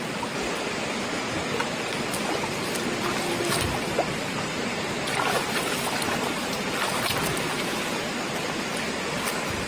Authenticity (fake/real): real